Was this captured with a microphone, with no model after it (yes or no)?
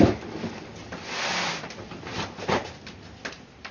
yes